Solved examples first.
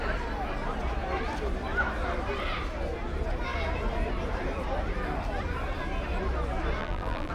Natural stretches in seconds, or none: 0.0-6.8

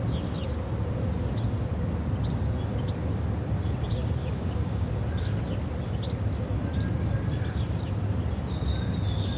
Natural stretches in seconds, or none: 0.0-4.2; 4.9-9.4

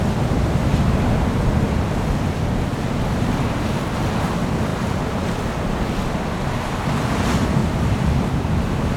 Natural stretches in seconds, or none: 0.0-7.6

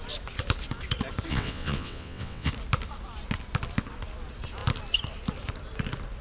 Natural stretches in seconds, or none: 0.0-1.3; 2.5-6.2